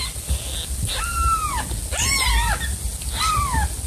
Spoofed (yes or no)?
no